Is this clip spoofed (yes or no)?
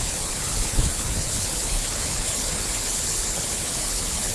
yes